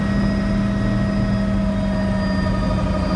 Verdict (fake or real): real